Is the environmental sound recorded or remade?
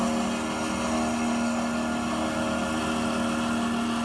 recorded